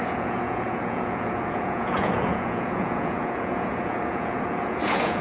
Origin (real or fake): fake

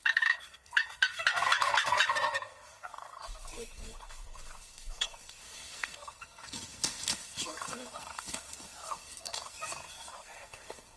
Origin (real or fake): fake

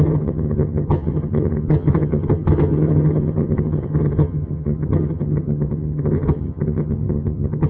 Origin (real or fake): fake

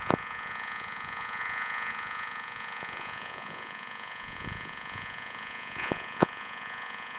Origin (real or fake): fake